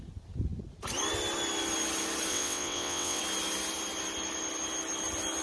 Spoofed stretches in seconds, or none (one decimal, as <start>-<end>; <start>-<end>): 2.3-3.2